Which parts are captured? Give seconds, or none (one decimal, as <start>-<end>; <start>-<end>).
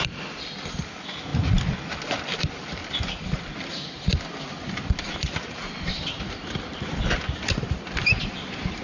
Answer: 4.3-4.9